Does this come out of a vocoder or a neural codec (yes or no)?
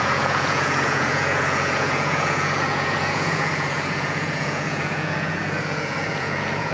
yes